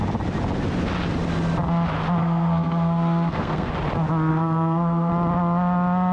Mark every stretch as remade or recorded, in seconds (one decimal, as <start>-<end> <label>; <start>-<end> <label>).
0.0-2.2 recorded; 2.2-3.7 remade; 3.7-4.3 recorded; 4.3-5.1 remade; 5.1-6.1 recorded

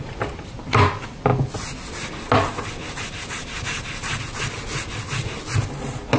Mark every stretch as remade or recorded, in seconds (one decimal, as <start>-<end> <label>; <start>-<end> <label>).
0.0-6.2 recorded

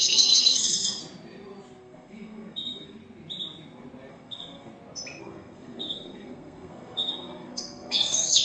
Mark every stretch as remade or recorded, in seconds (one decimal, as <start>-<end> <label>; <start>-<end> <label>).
0.0-1.0 remade; 1.0-1.8 recorded; 1.8-3.0 remade; 3.0-4.1 recorded; 4.1-4.7 remade; 4.7-5.2 recorded; 5.2-8.4 remade

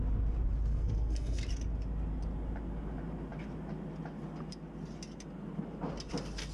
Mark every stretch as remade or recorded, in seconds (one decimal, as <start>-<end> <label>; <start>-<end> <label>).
0.0-0.7 recorded; 0.7-1.4 remade; 1.4-6.5 recorded

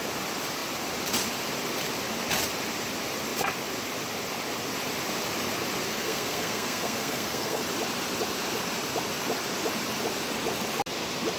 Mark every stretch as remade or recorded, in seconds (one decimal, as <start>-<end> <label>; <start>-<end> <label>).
0.0-5.9 recorded; 5.9-7.6 remade; 7.6-11.4 recorded

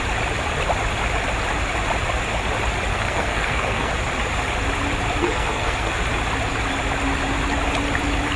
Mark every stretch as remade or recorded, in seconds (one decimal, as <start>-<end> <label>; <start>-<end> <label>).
0.0-2.9 recorded; 2.9-3.9 remade; 3.9-5.2 recorded; 5.2-6.0 remade; 6.0-8.4 recorded

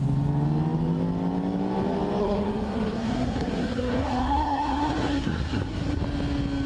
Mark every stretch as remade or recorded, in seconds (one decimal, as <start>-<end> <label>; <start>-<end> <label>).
0.0-2.2 recorded; 2.2-6.0 remade; 6.0-6.7 recorded

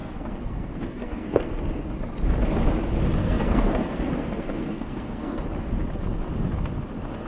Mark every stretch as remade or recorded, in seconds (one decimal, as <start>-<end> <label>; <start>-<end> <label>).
0.0-1.6 remade; 1.6-3.2 recorded; 3.2-5.4 remade; 5.4-7.3 recorded